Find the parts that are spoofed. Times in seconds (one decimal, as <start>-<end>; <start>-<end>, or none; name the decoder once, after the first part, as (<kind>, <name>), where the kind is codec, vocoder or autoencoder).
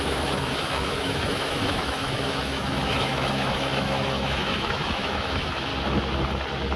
0.0-5.7 (autoencoder, DAC-VAE)